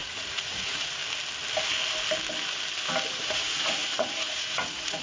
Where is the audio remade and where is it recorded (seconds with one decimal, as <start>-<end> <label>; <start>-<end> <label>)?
0.0-1.0 remade; 1.0-3.1 recorded; 3.1-5.0 remade